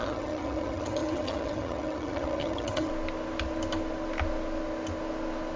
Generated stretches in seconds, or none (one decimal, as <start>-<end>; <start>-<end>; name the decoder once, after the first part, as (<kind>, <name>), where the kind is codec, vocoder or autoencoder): 0.0-2.9 (vocoder, HiFi-GAN)